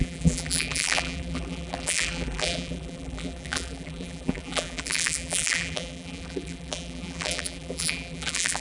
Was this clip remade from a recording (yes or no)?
yes